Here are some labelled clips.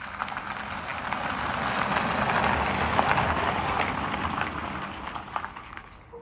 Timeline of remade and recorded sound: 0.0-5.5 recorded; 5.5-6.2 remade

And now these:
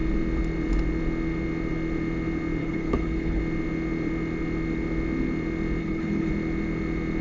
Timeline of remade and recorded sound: 0.0-2.6 recorded; 2.6-3.4 remade; 3.4-5.8 recorded; 5.8-6.3 remade; 6.3-7.2 recorded